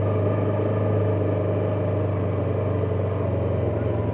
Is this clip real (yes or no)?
yes